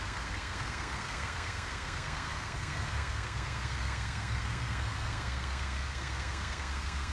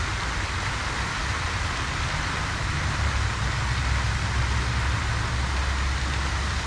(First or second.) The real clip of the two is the second